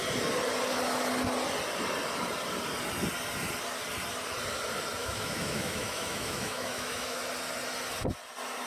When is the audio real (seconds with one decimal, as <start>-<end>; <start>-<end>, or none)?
0.0-5.0; 7.2-8.7